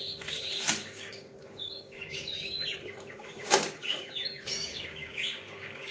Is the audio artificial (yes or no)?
yes